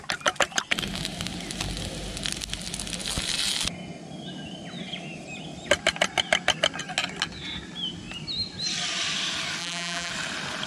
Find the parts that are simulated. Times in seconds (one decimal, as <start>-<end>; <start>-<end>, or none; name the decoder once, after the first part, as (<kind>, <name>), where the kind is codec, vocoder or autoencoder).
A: 9.6-10.1 (vocoder, BigVGAN v2)